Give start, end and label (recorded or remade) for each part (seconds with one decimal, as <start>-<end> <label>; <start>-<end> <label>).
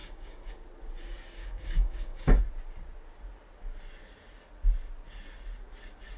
0.0-0.5 remade; 0.5-1.4 recorded; 1.4-2.4 remade; 2.4-6.2 recorded